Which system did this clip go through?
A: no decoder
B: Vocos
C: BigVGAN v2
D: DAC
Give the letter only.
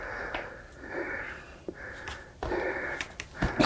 A